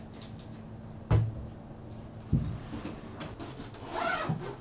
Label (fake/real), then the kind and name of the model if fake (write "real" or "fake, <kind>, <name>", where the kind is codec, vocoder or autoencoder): real